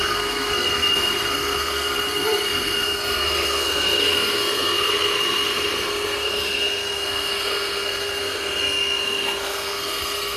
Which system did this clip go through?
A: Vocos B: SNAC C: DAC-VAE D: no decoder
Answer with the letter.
B